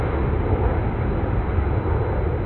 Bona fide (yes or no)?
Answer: yes